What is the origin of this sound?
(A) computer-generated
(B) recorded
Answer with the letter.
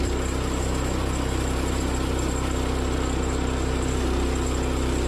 B